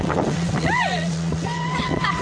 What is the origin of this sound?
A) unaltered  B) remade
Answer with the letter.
B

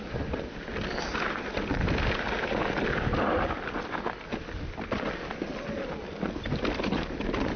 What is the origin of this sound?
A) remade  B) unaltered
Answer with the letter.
B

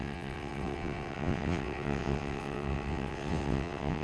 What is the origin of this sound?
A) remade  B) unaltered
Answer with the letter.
A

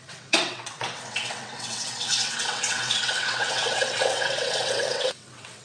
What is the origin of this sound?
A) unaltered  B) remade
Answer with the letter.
B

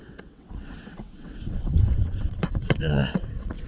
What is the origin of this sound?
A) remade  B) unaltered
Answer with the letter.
A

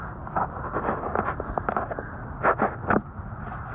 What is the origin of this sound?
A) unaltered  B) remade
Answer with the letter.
A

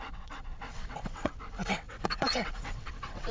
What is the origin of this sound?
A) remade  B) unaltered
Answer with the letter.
A